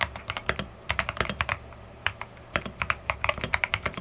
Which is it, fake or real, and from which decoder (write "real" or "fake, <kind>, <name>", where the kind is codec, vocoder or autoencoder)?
fake, vocoder, BigVGAN v2